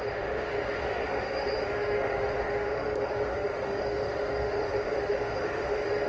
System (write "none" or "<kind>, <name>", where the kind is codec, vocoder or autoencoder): autoencoder, DAC-VAE